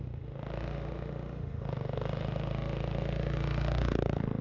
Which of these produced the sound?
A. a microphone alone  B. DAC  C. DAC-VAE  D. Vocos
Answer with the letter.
C